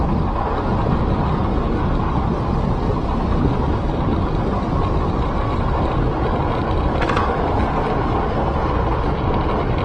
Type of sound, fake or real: real